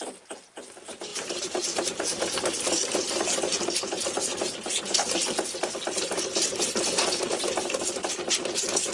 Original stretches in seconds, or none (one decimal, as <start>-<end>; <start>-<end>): 0.0-1.1; 2.0-8.9